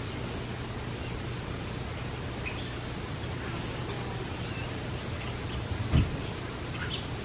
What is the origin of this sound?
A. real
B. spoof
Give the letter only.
A